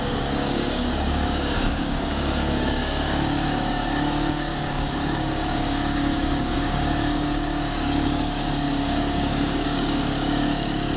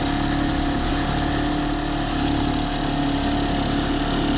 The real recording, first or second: second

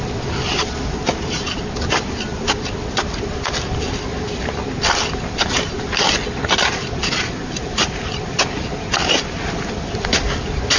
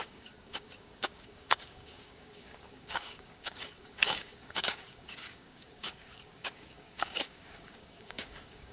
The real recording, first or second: first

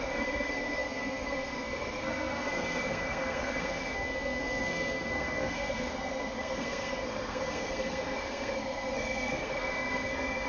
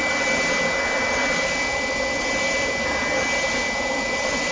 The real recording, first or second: second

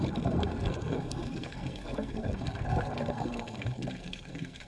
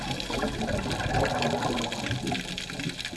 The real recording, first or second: second